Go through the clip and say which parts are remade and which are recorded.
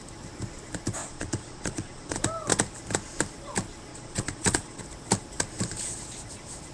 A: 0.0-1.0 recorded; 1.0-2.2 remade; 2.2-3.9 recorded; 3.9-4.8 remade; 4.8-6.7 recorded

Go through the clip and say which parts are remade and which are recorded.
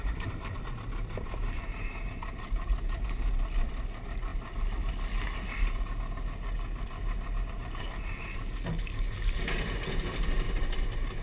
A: 0.0-11.2 recorded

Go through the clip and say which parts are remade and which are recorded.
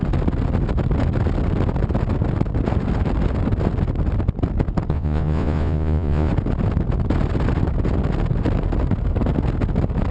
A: 0.0-4.9 recorded; 4.9-6.3 remade; 6.3-10.1 recorded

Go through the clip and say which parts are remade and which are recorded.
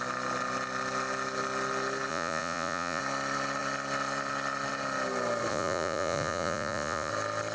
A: 0.0-2.1 recorded; 2.1-3.0 remade; 3.0-5.5 recorded; 5.5-7.1 remade; 7.1-7.5 recorded